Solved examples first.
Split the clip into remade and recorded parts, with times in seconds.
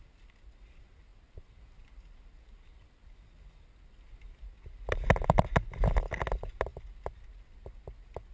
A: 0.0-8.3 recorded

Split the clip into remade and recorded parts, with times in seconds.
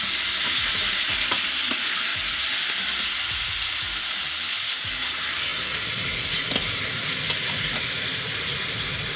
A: 0.0-9.2 recorded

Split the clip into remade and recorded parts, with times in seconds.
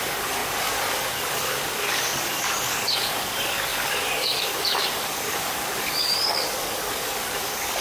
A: 0.0-7.8 remade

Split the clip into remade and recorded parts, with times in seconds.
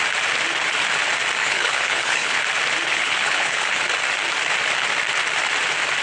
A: 0.0-1.4 recorded; 1.4-2.4 remade; 2.4-2.9 recorded; 2.9-3.8 remade; 3.8-6.0 recorded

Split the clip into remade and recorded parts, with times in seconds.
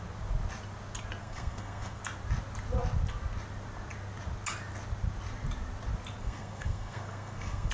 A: 0.0-1.2 recorded; 1.2-2.0 remade; 2.0-6.2 recorded; 6.2-7.7 remade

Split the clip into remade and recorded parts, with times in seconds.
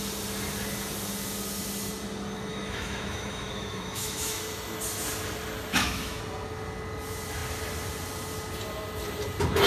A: 0.0-2.5 recorded; 2.5-4.4 remade; 4.4-5.7 recorded; 5.7-6.2 remade; 6.2-9.7 recorded